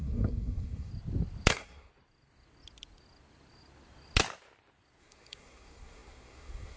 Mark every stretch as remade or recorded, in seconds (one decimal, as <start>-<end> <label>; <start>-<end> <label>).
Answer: 0.0-0.9 remade; 0.9-1.5 recorded; 1.5-1.9 remade; 1.9-5.0 recorded; 5.0-6.8 remade